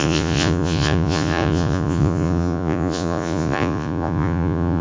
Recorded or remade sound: remade